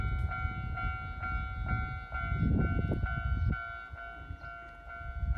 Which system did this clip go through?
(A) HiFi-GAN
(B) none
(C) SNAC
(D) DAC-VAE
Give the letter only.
B